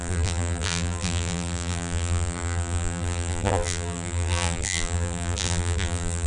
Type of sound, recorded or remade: remade